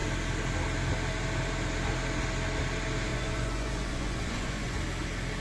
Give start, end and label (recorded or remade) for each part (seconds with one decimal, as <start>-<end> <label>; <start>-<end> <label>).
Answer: 0.0-3.1 recorded; 3.1-4.8 remade; 4.8-5.4 recorded